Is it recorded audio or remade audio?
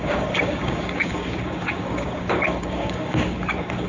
remade